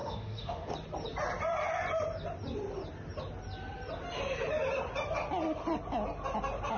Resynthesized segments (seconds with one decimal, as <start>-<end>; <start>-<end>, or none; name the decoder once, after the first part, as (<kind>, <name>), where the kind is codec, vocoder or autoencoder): 0.0-0.7 (autoencoder, DAC-VAE)